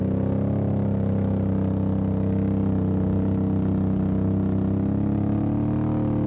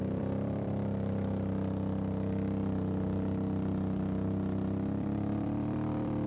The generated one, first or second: second